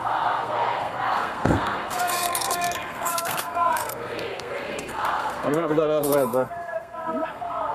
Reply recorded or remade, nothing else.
remade